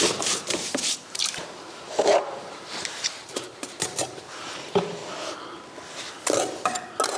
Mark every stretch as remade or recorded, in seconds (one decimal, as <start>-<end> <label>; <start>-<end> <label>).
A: 0.0-5.0 remade; 5.0-7.2 recorded